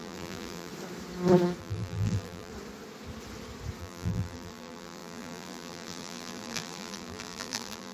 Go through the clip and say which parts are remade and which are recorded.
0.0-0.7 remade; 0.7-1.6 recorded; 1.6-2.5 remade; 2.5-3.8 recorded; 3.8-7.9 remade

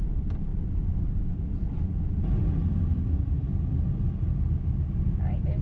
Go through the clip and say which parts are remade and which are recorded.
0.0-5.6 recorded

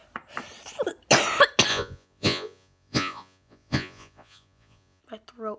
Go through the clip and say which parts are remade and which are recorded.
0.0-1.7 recorded; 1.7-5.0 remade; 5.0-5.6 recorded

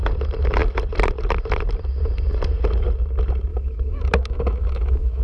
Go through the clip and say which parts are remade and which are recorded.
0.0-3.5 recorded; 3.5-5.2 remade

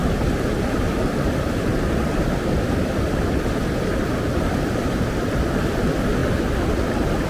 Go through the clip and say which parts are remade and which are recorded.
0.0-6.2 remade; 6.2-7.3 recorded